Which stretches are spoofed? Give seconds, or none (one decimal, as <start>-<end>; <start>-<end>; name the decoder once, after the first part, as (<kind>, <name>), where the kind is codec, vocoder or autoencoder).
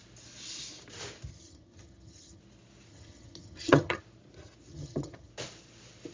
1.3-2.4 (vocoder, HiFi-GAN); 2.9-4.0; 4.7-5.3